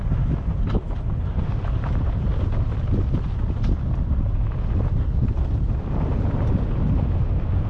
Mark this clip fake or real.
real